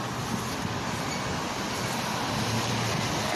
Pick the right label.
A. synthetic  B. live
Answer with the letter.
B